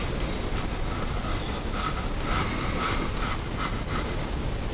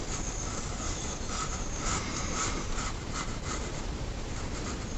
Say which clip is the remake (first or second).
second